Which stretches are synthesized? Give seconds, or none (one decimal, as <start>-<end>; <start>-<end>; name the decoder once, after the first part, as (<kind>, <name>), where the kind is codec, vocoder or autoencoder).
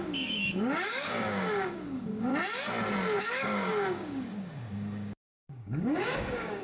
0.0-2.3 (codec, DAC); 3.2-6.6